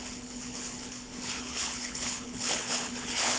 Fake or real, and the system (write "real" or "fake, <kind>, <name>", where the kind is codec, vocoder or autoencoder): fake, codec, HILCodec